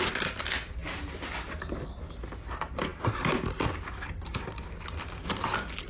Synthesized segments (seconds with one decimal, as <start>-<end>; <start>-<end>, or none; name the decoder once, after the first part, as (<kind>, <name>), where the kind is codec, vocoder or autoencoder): none